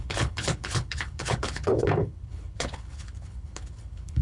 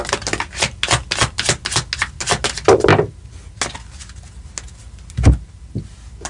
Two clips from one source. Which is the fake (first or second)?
first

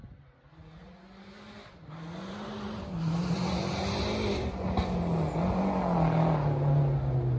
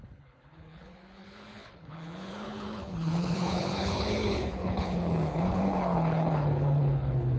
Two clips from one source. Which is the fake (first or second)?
second